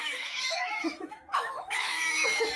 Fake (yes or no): yes